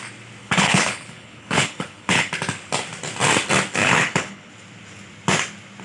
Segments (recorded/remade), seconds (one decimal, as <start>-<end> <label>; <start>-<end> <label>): 0.0-0.4 recorded; 0.4-2.3 remade; 2.3-3.8 recorded; 3.8-4.5 remade; 4.5-5.8 recorded